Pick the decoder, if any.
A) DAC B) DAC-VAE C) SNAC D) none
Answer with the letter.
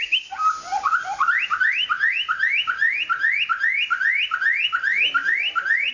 D